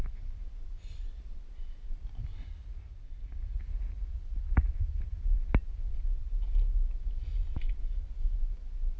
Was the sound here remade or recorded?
recorded